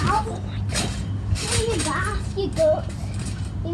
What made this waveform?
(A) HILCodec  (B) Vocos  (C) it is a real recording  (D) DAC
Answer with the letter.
C